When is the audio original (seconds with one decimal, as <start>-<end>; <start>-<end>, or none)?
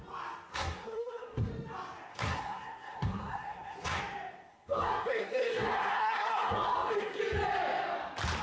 0.0-0.5; 1.5-2.1; 4.0-4.5; 7.2-8.4